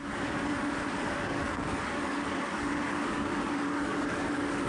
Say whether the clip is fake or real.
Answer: fake